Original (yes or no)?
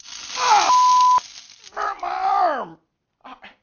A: yes